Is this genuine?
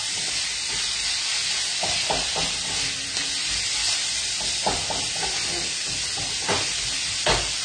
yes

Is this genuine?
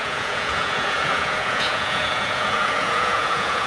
no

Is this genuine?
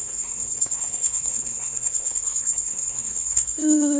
no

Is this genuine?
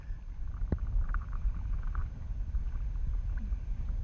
yes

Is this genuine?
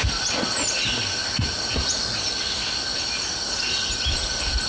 yes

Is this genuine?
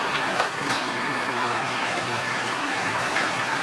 no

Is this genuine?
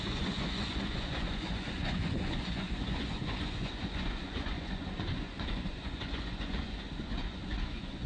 no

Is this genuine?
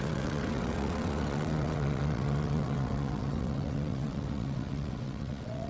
no